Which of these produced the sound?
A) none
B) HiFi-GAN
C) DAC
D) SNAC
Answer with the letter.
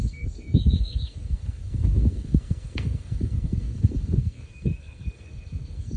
D